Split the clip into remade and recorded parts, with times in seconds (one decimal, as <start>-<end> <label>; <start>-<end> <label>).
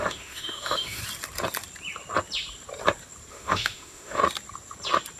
0.0-1.0 remade; 1.0-3.3 recorded; 3.3-4.2 remade; 4.2-5.2 recorded